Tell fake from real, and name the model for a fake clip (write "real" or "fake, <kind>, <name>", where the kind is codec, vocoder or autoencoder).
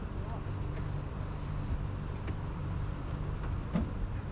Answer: real